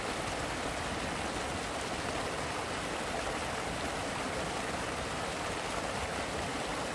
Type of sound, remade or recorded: recorded